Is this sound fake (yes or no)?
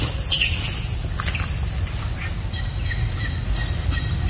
no